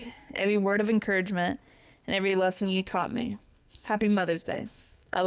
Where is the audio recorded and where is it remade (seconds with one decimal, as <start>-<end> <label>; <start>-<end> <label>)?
0.0-0.8 remade; 0.8-2.3 recorded; 2.3-5.3 remade